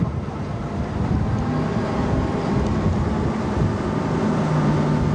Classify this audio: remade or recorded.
recorded